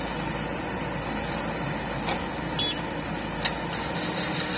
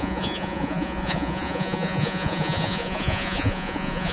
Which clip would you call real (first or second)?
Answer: first